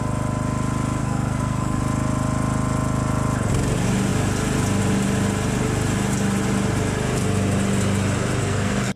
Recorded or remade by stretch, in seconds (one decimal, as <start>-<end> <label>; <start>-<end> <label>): 0.0-1.0 recorded; 1.0-1.8 remade; 1.8-8.4 recorded; 8.4-9.0 remade